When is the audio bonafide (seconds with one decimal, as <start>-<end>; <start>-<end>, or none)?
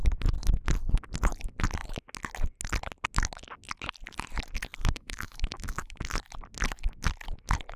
0.0-4.8; 6.0-7.8